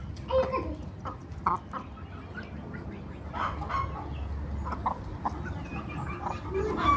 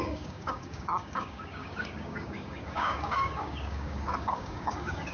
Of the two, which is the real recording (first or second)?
first